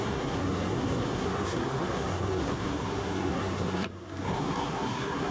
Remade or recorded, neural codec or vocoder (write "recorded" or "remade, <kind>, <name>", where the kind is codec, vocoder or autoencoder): remade, codec, SNAC